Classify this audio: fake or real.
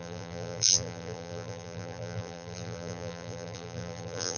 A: fake